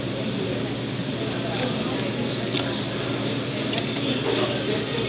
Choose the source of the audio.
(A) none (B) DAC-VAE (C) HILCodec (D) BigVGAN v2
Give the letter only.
A